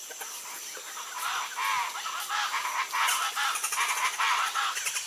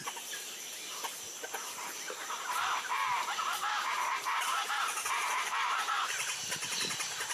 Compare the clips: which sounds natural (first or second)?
first